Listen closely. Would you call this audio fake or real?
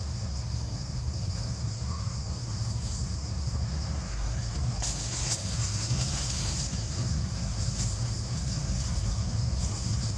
fake